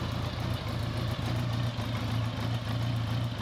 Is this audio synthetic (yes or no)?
no